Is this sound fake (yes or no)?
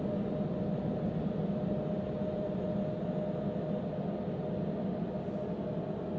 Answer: no